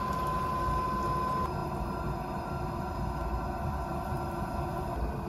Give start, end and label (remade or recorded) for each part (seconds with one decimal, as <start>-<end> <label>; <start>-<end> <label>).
0.0-5.3 recorded